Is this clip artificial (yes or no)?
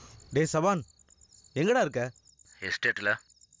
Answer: no